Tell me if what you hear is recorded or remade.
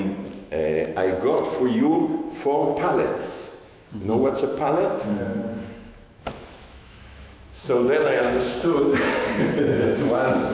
remade